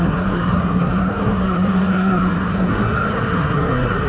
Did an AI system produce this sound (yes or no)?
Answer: yes